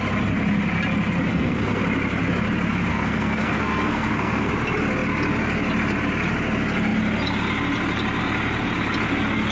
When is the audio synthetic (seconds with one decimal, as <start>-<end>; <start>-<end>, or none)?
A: 1.3-1.8; 2.9-4.5